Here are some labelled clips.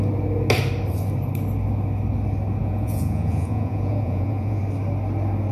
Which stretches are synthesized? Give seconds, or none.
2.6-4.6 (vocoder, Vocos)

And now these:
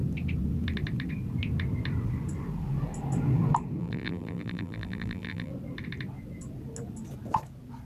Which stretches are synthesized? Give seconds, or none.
3.8-5.5 (vocoder, BigVGAN v2)

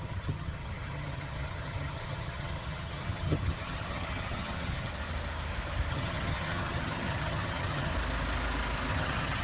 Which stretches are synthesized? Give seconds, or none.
0.0-4.9 (vocoder, HiFi-GAN); 5.9-7.9; 8.9-9.4

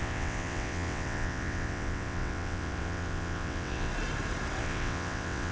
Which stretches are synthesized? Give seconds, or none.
0.0-3.9 (vocoder, WaveNeXt); 4.6-5.5

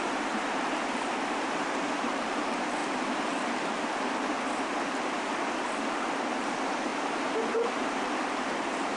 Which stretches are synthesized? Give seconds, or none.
0.0-2.8 (vocoder, BigVGAN v2); 5.9-6.9; 7.5-9.0

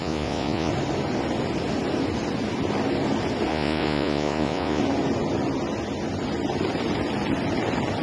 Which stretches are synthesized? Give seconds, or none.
0.0-0.7 (vocoder, Vocos); 3.5-4.8

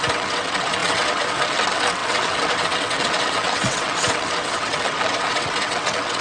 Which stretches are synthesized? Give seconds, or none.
0.0-6.2 (vocoder, WaveNeXt)